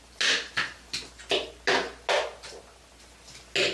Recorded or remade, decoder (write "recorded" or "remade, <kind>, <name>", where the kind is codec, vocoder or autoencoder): recorded